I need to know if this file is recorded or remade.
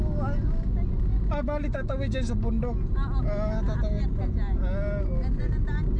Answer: recorded